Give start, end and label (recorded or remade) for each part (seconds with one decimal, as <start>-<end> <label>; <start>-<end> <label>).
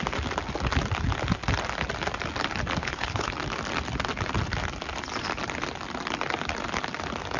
0.0-2.8 recorded; 2.8-3.3 remade; 3.3-7.4 recorded